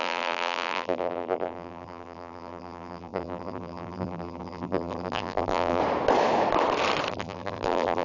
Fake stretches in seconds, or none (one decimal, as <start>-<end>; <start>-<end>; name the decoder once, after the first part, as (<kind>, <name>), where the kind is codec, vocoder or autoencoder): 0.0-5.8 (vocoder, BigVGAN v2); 7.1-8.0